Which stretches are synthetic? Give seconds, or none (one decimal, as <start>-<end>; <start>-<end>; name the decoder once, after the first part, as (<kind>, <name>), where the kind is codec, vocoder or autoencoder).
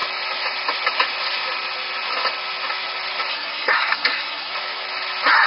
3.3-4.5 (codec, SNAC)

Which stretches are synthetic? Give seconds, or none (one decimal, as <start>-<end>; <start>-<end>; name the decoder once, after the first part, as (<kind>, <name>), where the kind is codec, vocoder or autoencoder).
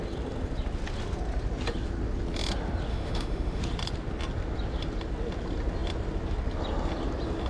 2.9-3.6 (autoencoder, DAC-VAE)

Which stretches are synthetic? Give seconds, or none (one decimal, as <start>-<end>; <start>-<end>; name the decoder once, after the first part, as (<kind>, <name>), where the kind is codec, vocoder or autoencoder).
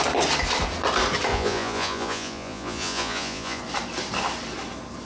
1.3-3.6 (vocoder, Vocos)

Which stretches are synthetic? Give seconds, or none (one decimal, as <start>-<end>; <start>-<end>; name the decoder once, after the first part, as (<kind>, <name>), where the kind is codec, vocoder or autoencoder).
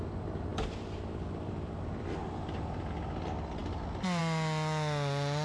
none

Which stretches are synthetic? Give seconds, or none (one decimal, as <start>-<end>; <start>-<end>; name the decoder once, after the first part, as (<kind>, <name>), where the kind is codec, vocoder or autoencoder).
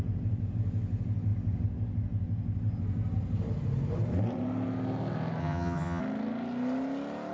5.4-6.0 (vocoder, HiFi-GAN)